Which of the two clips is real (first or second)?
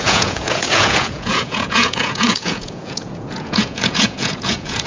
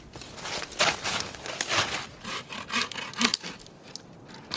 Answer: second